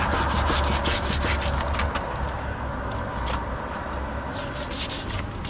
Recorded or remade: recorded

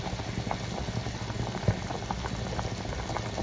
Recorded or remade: recorded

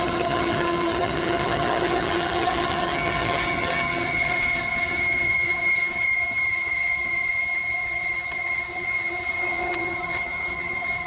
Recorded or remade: remade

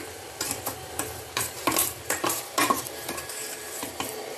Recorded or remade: remade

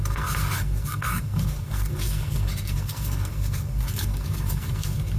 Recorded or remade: remade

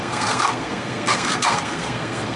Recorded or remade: remade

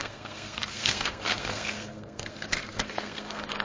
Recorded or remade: remade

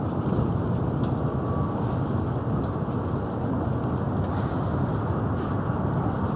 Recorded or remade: recorded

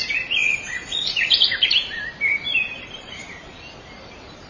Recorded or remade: remade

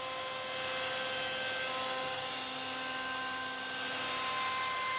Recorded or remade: recorded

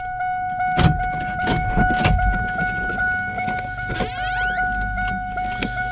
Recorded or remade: recorded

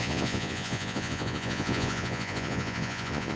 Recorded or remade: remade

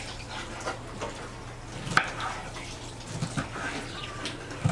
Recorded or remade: recorded